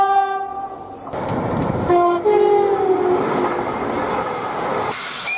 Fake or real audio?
real